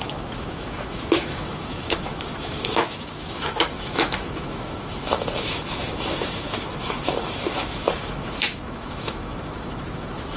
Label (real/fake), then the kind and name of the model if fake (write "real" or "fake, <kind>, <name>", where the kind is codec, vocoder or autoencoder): fake, autoencoder, DAC-VAE